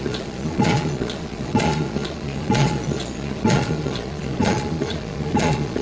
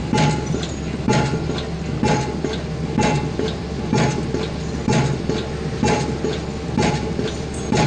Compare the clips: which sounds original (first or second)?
second